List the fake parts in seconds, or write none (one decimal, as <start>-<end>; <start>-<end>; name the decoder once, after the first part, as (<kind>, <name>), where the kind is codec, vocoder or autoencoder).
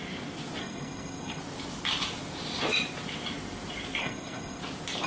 0.6-1.4 (codec, SNAC); 4.0-4.6